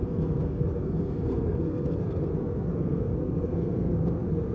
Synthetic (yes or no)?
yes